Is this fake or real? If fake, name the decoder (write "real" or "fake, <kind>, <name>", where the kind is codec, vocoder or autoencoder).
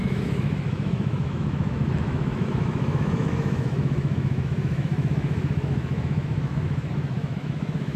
fake, autoencoder, DAC-VAE